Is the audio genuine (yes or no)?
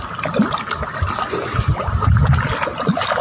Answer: yes